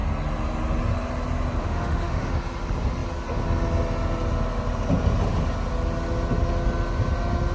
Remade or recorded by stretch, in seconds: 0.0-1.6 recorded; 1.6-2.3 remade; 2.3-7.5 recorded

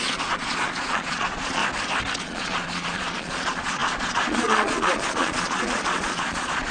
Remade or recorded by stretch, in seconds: 0.0-1.6 remade; 1.6-2.2 recorded; 2.2-6.7 remade

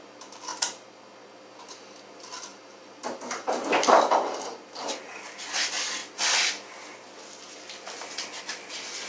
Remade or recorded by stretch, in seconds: 0.0-2.5 recorded; 2.5-4.1 remade; 4.1-9.1 recorded

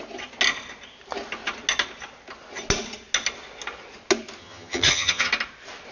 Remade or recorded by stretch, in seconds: 0.0-4.4 recorded; 4.4-5.3 remade; 5.3-5.9 recorded

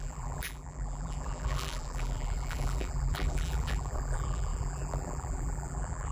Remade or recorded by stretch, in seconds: 0.0-6.1 remade

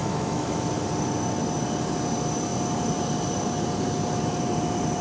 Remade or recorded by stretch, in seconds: 0.0-0.7 remade; 0.7-5.0 recorded

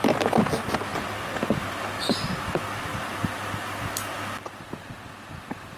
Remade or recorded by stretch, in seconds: 0.0-0.9 recorded; 0.9-1.8 remade; 1.8-3.1 recorded; 3.1-4.1 remade; 4.1-5.8 recorded